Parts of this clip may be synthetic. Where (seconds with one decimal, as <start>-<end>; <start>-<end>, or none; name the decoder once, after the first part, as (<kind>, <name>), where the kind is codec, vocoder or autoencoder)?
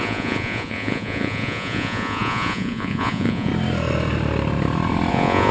0.0-3.5 (vocoder, Vocos); 5.1-5.5